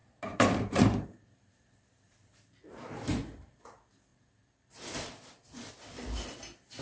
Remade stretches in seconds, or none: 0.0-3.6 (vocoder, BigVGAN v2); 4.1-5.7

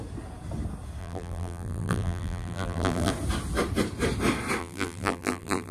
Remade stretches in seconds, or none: 1.0-3.1 (vocoder, BigVGAN v2); 4.6-5.7